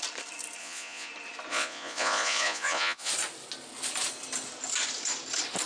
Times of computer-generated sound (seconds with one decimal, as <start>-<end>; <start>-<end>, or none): 0.6-1.1; 1.5-3.1